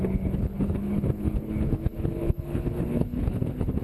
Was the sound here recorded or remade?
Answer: remade